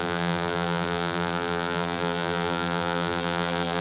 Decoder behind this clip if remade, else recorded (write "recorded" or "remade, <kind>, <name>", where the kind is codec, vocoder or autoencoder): remade, vocoder, BigVGAN v2